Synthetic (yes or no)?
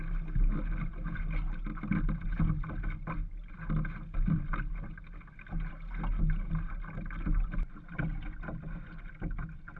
no